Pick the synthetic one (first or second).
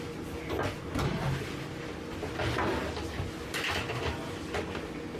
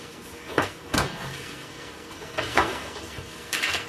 second